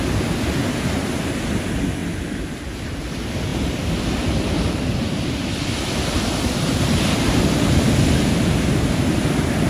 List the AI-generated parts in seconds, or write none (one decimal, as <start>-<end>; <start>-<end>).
none